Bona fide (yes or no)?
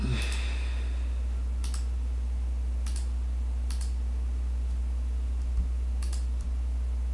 yes